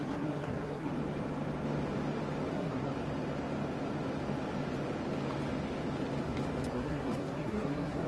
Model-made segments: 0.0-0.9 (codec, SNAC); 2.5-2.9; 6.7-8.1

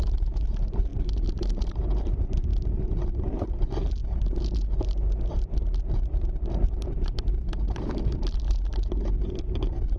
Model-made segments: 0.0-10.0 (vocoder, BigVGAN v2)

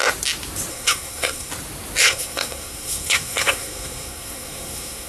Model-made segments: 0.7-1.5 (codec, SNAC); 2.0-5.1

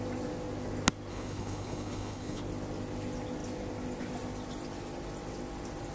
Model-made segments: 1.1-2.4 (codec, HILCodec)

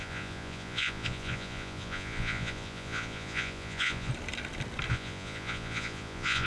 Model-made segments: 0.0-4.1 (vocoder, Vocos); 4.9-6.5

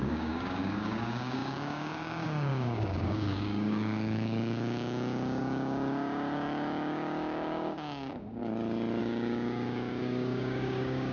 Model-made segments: 0.0-8.4 (codec, DAC); 9.0-11.1

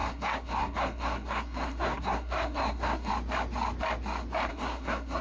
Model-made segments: 0.0-3.1 (codec, SNAC); 4.5-5.2